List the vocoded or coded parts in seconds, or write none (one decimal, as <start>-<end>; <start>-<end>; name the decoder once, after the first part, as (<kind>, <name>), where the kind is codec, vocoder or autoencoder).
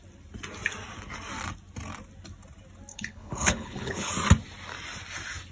2.9-4.1 (codec, HILCodec)